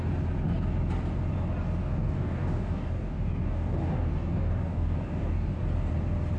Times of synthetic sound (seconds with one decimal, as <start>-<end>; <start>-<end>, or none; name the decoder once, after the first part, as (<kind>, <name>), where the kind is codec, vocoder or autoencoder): 1.8-5.6 (codec, DAC)